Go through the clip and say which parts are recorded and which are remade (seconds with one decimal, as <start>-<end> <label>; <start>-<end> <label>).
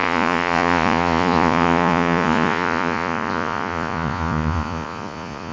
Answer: 0.0-5.5 remade